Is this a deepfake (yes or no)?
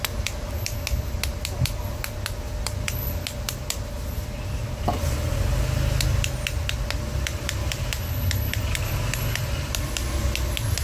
no